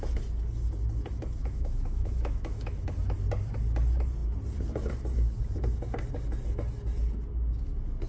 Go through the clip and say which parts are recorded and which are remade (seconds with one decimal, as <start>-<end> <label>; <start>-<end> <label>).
0.0-1.4 recorded; 1.4-2.7 remade; 2.7-8.1 recorded